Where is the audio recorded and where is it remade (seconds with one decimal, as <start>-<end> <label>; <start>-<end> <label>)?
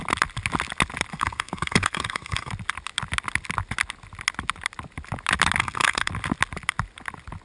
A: 0.0-1.1 recorded; 1.1-2.5 remade; 2.5-5.6 recorded; 5.6-6.1 remade; 6.1-7.4 recorded